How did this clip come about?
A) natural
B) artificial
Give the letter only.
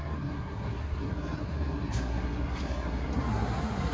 B